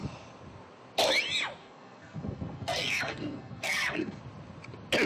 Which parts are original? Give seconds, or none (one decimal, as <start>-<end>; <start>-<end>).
0.0-1.6; 4.2-5.1